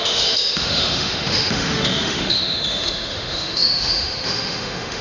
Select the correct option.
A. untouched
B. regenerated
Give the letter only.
B